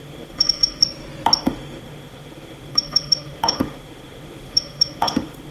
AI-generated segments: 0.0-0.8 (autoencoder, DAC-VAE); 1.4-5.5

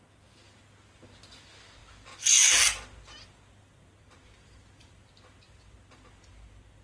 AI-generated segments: none

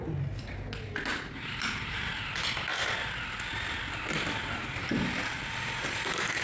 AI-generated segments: 1.1-2.1 (vocoder, BigVGAN v2)

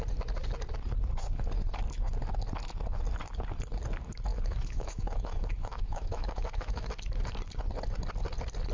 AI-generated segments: 4.3-6.9 (autoencoder, DAC-VAE)